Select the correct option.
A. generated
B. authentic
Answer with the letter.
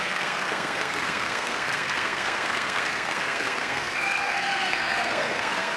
A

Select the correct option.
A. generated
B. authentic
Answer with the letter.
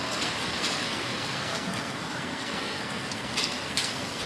A